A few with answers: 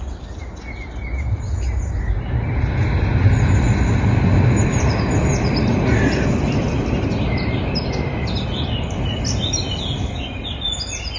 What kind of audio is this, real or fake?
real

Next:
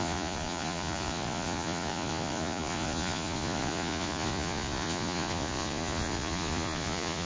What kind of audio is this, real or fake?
fake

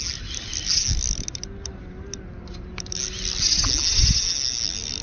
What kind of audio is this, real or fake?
real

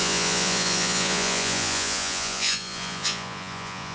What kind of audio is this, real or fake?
fake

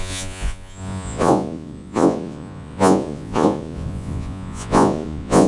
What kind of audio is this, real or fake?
fake